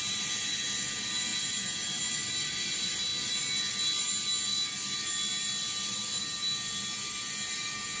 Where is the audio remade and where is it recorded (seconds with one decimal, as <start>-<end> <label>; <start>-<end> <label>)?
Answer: 0.0-8.0 recorded